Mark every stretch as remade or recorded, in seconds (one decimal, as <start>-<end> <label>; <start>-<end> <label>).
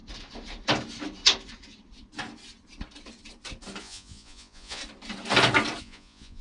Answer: 0.0-3.8 recorded; 3.8-4.8 remade; 4.8-5.8 recorded; 5.8-6.4 remade